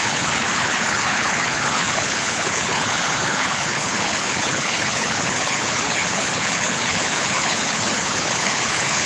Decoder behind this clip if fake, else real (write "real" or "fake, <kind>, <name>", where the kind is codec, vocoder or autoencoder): fake, codec, HILCodec